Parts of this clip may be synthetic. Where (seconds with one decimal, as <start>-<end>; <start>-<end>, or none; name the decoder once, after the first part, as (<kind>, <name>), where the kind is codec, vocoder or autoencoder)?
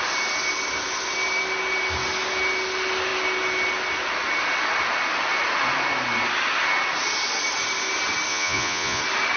8.3-9.0 (vocoder, Vocos)